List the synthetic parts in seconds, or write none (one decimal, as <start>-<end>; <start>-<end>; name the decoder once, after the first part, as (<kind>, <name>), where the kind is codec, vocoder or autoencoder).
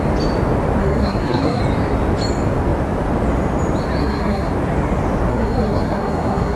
0.8-1.6 (codec, SNAC); 4.0-4.5; 5.3-6.6